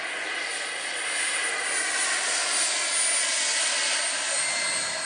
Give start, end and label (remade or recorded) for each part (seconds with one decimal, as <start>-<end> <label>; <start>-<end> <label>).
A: 0.0-5.1 recorded